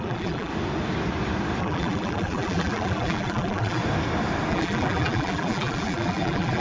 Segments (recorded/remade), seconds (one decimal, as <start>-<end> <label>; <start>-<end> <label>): 0.0-0.5 remade; 0.5-1.6 recorded; 1.6-3.8 remade; 3.8-4.5 recorded; 4.5-6.6 remade